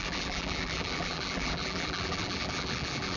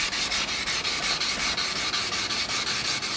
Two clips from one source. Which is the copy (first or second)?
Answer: first